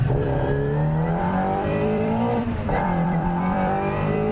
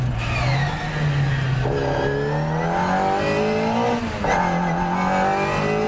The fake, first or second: first